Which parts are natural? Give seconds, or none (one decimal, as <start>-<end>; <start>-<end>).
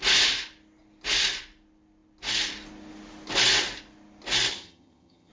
0.0-4.5